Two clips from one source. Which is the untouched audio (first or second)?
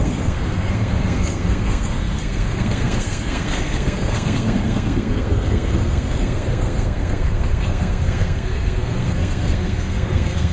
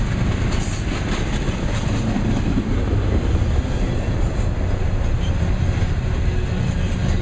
second